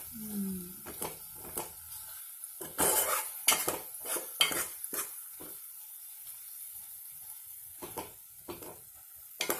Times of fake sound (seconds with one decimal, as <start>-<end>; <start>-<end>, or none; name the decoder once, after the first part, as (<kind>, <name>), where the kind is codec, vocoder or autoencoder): none